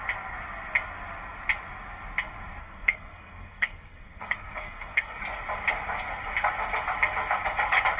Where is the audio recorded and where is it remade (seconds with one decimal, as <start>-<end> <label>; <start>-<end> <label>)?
0.0-2.6 recorded; 2.6-5.2 remade; 5.2-8.0 recorded